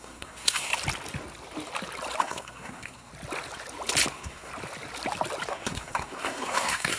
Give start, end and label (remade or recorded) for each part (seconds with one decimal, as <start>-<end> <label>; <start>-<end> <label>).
0.0-0.7 remade; 0.7-2.2 recorded; 2.2-3.1 remade; 3.1-4.1 recorded; 4.1-4.5 remade; 4.5-5.5 recorded; 5.5-7.0 remade